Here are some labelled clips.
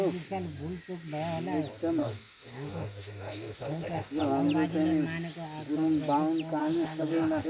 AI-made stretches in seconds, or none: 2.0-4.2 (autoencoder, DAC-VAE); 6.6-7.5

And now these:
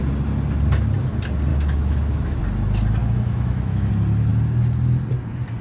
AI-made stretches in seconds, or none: 1.5-2.4 (autoencoder, DAC-VAE); 3.0-3.9